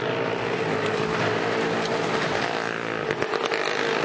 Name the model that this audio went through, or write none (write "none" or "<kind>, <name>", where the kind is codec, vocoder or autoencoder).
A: none